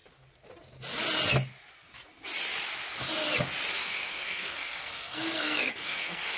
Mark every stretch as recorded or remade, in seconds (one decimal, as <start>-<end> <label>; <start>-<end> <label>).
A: 0.0-3.8 recorded; 3.8-6.4 remade